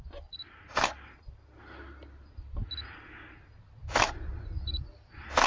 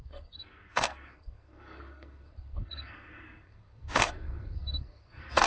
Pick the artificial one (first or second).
second